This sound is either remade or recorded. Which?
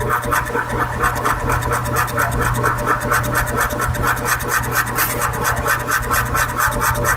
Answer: recorded